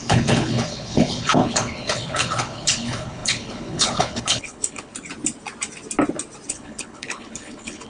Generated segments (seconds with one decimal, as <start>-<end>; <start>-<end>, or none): 0.0-4.9; 6.5-7.9